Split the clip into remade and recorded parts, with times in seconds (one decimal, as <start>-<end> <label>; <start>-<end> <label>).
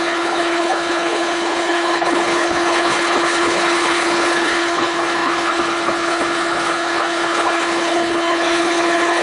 0.0-9.2 remade